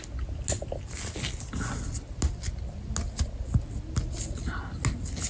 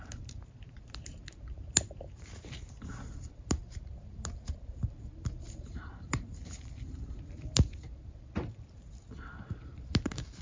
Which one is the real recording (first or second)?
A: first